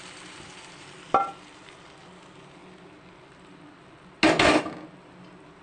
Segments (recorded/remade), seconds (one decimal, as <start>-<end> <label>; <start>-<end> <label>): 0.0-5.6 recorded